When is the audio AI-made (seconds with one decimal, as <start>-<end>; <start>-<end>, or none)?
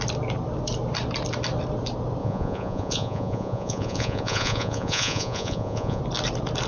2.2-6.0